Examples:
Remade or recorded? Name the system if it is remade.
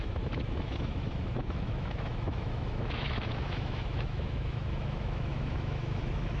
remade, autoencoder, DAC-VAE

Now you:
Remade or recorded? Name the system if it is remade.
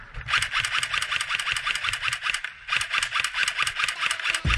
recorded